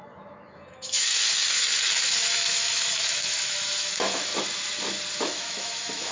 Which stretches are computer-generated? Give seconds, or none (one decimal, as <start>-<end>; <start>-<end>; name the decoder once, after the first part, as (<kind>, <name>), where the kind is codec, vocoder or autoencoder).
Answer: 0.0-4.3 (autoencoder, DAC-VAE); 5.2-6.1